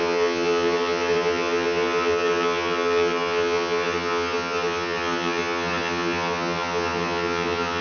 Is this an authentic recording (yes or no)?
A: no